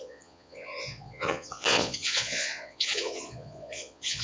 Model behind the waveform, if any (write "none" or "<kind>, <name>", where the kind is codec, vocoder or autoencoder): vocoder, Vocos